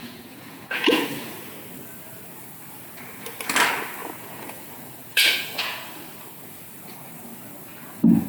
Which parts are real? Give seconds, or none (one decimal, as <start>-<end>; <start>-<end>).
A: 1.3-4.0; 5.9-7.7